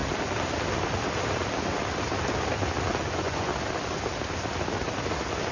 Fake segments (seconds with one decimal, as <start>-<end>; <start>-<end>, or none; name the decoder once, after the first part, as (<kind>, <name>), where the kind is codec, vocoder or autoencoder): 3.1-3.5 (vocoder, Vocos)